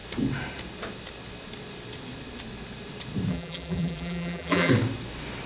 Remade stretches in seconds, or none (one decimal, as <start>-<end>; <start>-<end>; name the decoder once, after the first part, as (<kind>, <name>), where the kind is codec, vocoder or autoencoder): 3.3-4.7 (vocoder, BigVGAN v2)